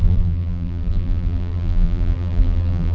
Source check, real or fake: fake